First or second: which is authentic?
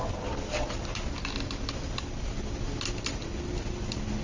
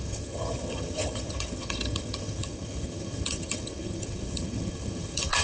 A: first